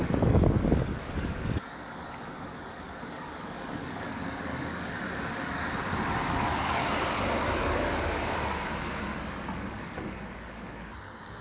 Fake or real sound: fake